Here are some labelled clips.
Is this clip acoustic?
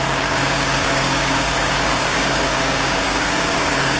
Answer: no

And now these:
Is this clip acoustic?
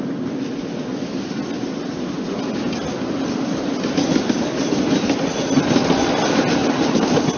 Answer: yes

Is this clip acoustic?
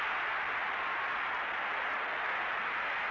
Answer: yes